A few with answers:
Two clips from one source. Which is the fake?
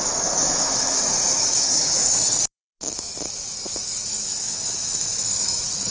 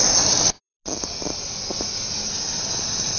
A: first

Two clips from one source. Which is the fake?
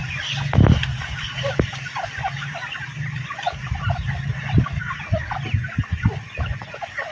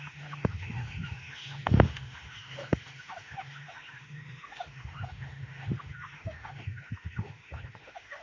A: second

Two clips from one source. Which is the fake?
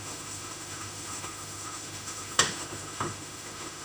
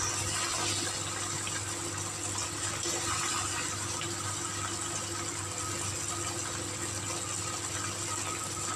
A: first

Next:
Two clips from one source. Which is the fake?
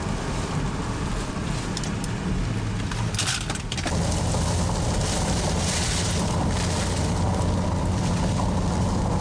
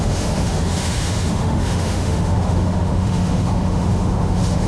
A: second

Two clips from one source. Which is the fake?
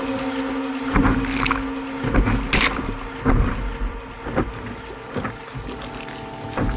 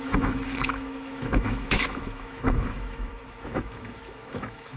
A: second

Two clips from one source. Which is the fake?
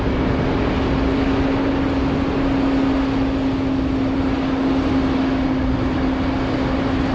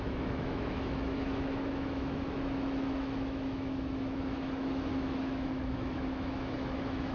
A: second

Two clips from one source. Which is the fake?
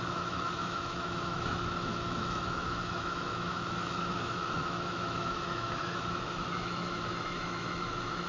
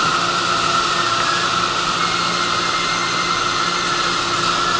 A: first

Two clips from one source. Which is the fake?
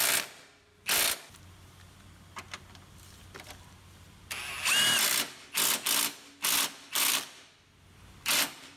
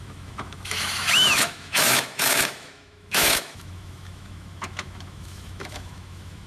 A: second